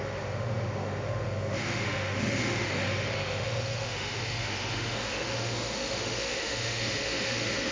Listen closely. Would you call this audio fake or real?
fake